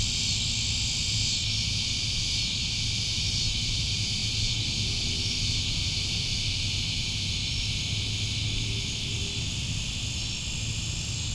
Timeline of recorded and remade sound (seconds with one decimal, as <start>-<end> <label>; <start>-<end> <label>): 0.0-11.3 recorded